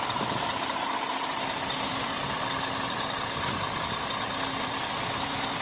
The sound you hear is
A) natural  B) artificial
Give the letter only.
B